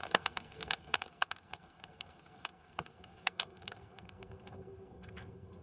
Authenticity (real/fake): fake